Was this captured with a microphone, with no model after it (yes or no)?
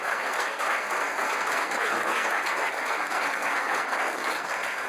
no